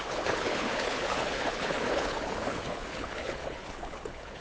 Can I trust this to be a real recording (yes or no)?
no